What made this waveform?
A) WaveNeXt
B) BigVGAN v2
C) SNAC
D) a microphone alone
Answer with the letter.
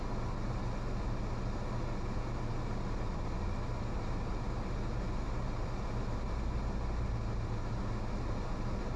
D